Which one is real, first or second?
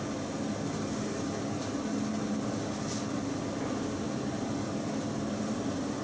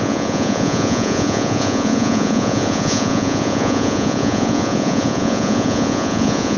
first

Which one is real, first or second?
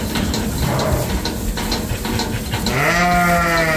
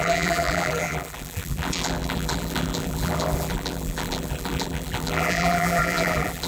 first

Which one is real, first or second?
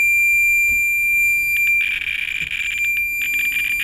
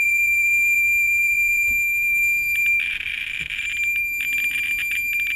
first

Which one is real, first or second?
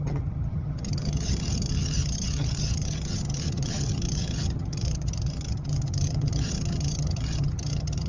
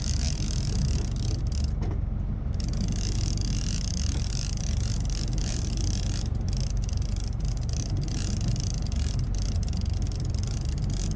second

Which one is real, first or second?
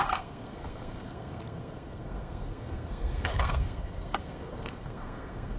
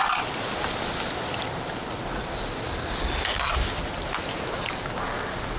second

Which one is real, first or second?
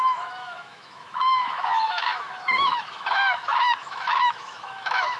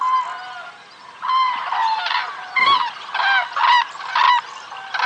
second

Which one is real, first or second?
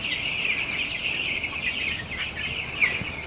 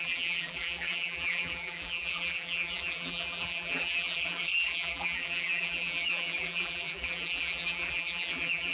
first